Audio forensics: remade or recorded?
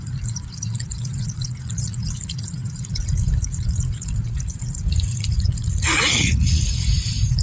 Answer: remade